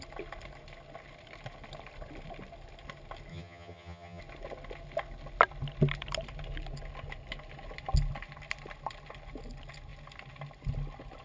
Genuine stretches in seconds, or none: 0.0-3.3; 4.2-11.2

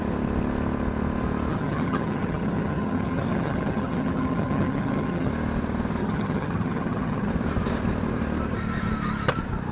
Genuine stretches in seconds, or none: 0.0-1.5; 5.3-6.0; 7.3-9.7

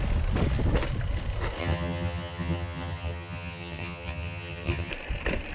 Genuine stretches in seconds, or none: 0.0-1.6; 4.9-5.5

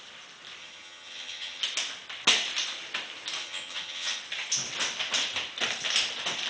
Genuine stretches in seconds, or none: 0.0-0.6; 1.6-3.4; 4.2-6.5

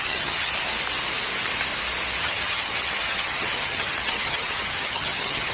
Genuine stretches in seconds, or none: 0.5-2.2